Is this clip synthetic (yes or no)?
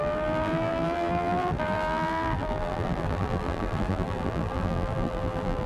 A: yes